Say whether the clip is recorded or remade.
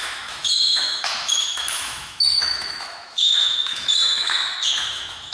remade